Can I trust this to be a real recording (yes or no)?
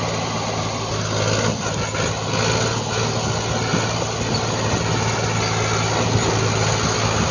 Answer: yes